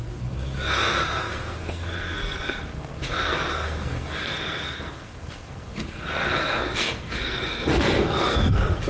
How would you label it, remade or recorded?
remade